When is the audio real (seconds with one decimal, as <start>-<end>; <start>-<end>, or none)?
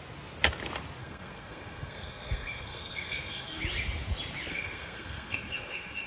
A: 0.0-1.0; 3.6-4.5